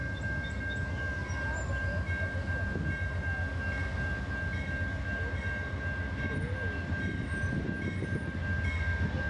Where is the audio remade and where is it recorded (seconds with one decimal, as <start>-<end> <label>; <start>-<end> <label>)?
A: 0.0-9.3 recorded